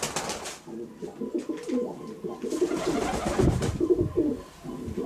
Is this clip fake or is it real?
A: real